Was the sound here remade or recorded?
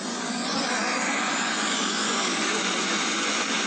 remade